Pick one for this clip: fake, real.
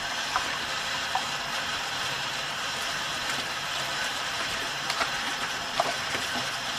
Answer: fake